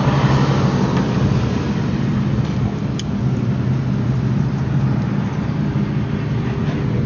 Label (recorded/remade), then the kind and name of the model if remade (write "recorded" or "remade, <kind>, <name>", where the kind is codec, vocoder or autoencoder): recorded